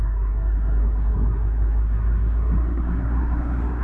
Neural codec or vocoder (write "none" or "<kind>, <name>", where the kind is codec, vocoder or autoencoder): codec, SNAC